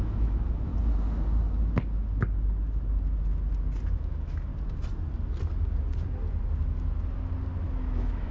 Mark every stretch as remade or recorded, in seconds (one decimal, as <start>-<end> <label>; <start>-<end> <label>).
0.0-0.7 remade; 0.7-3.9 recorded; 3.9-4.5 remade; 4.5-7.8 recorded; 7.8-8.3 remade